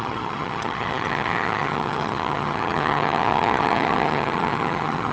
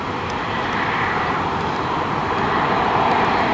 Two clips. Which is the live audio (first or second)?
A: second